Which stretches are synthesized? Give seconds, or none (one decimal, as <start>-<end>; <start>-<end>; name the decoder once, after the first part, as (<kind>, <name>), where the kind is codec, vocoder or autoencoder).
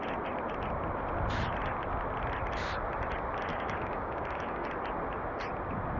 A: 3.5-4.7 (codec, DAC)